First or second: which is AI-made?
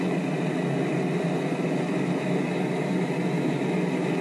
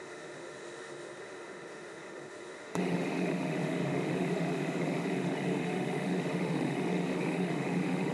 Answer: second